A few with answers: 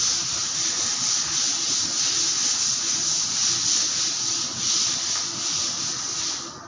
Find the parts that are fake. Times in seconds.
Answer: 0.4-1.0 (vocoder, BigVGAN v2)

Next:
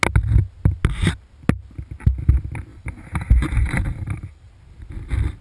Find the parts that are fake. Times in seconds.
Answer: 2.7-4.5 (vocoder, BigVGAN v2)